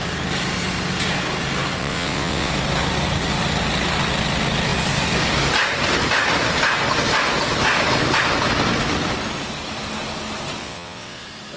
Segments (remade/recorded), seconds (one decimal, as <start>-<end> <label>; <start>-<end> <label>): 0.0-1.8 recorded; 1.8-2.5 remade; 2.5-10.6 recorded; 10.6-11.2 remade; 11.2-11.6 recorded